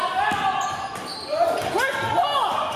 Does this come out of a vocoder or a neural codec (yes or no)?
no